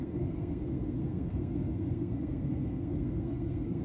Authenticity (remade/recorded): remade